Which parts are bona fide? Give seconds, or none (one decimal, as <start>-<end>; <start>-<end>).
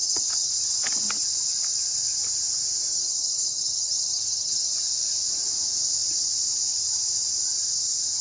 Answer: 0.5-2.9; 4.7-8.2